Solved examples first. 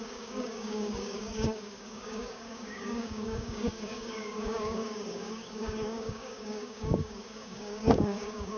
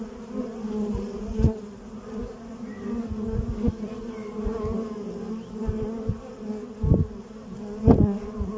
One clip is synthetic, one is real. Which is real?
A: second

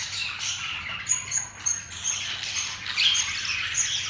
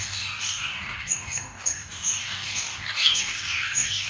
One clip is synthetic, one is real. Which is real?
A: first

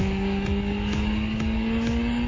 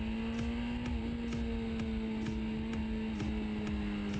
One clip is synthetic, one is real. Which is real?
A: second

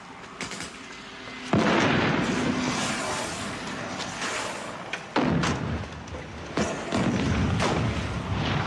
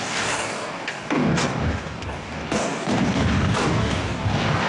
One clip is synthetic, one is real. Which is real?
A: first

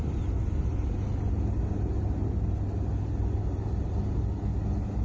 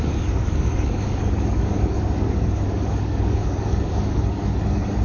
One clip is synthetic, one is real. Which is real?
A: first